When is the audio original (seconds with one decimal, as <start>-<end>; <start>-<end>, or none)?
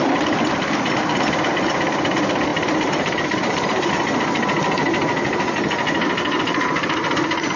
0.0-2.5; 3.9-7.6